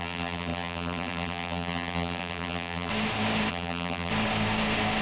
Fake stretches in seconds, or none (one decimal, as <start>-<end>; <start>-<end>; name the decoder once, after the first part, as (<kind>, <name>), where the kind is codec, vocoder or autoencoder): 0.0-2.9 (vocoder, BigVGAN v2); 3.5-4.1